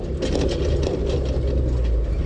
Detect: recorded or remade recorded